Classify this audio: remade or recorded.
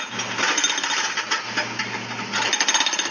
recorded